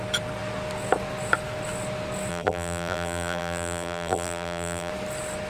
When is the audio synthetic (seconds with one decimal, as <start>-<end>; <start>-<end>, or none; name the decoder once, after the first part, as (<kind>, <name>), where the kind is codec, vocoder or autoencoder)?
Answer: 2.3-4.9 (vocoder, BigVGAN v2)